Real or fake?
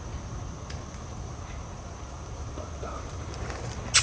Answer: real